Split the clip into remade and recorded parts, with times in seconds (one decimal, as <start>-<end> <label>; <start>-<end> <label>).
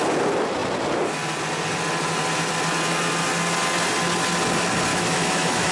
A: 0.0-4.9 recorded; 4.9-5.7 remade